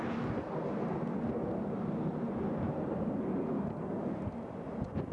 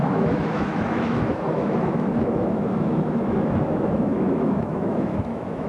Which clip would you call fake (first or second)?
second